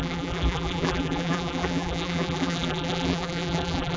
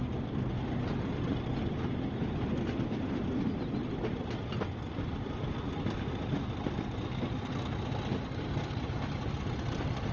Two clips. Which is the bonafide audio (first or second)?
second